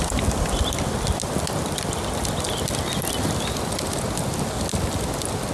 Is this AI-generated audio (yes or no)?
no